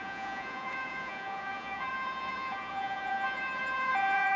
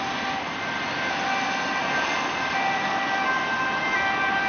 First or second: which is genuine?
second